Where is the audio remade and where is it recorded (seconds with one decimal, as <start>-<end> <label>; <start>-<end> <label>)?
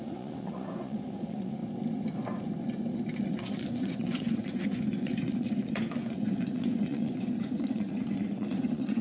0.0-1.6 remade; 1.6-3.3 recorded; 3.3-9.0 remade